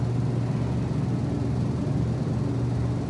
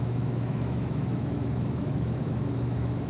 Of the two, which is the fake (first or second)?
second